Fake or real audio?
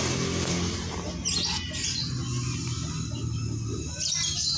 real